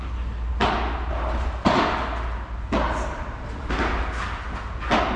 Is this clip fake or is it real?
real